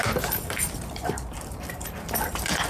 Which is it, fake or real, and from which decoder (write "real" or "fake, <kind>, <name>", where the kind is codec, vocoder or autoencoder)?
fake, vocoder, BigVGAN v2